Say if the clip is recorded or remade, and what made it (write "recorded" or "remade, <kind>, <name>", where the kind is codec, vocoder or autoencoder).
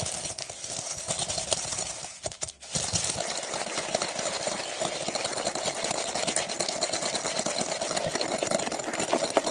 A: recorded